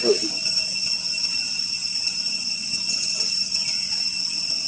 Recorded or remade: recorded